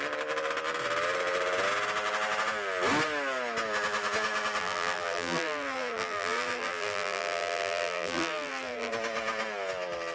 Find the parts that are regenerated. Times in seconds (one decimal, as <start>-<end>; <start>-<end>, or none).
4.6-8.9